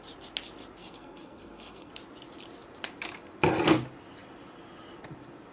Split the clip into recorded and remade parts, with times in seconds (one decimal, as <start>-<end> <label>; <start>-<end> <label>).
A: 0.0-0.8 recorded; 0.8-1.9 remade; 1.9-5.5 recorded